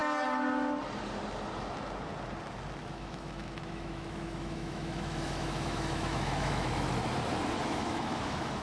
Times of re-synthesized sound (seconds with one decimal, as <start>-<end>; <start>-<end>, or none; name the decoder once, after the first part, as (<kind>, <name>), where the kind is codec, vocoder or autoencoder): 2.8-7.0 (autoencoder, DAC-VAE); 7.6-8.6